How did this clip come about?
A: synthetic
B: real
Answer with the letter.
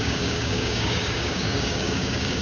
A